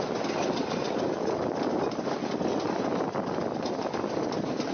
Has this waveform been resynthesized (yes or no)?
no